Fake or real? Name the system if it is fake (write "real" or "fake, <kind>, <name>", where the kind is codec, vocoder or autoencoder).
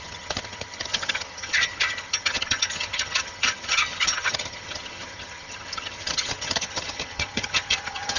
fake, vocoder, HiFi-GAN